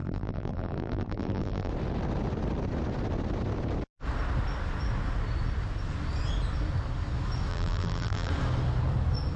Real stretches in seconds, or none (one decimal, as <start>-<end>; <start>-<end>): 1.7-7.5; 8.3-9.4